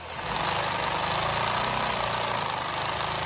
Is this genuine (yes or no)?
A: yes